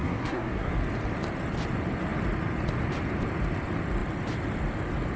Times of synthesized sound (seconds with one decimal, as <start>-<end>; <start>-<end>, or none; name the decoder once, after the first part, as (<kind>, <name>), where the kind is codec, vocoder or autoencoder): 0.0-0.7 (codec, SNAC)